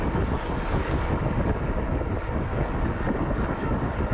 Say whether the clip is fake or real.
fake